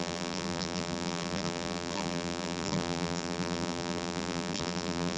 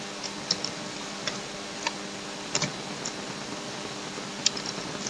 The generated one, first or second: first